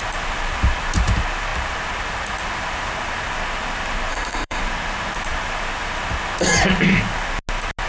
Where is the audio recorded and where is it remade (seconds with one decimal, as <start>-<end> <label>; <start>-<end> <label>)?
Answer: 0.0-4.1 recorded; 4.1-4.6 remade; 4.6-7.9 recorded